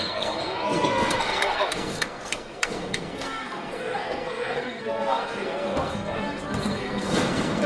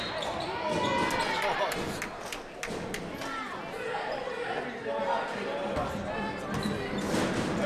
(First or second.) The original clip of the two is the second